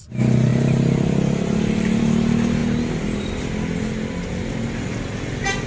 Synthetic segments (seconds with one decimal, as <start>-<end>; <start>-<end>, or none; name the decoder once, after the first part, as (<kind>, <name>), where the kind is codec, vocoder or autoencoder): none